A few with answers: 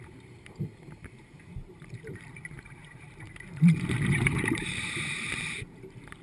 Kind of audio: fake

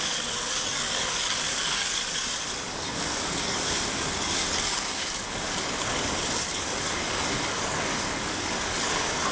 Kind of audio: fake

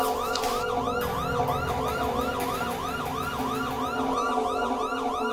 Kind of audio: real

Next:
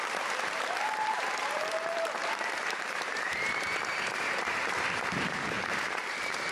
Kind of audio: fake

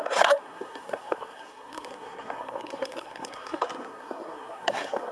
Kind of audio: fake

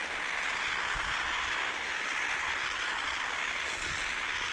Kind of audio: real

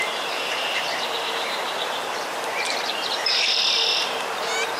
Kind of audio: fake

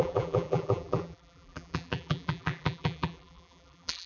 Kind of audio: fake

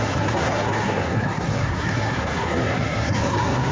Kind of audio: fake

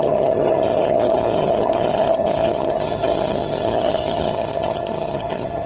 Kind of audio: fake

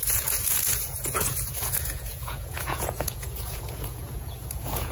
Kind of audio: fake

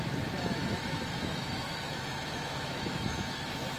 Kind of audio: fake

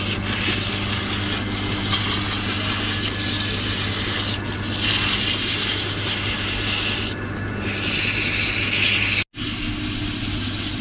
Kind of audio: real